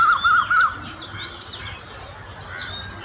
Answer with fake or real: real